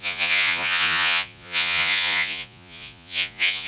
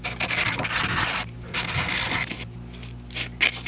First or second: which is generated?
first